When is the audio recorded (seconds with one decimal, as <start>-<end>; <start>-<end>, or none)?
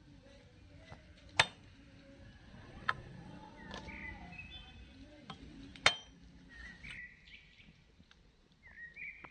0.0-2.5; 3.6-9.3